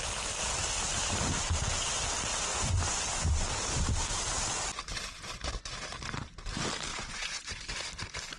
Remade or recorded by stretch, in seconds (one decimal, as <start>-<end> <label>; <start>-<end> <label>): 0.0-2.5 recorded; 2.5-3.0 remade; 3.0-6.9 recorded; 6.9-7.6 remade; 7.6-8.4 recorded